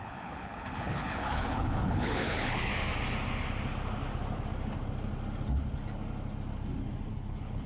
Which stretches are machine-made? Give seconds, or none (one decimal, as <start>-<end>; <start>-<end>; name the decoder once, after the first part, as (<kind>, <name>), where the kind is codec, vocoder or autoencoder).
0.0-2.7 (codec, HILCodec); 7.1-7.7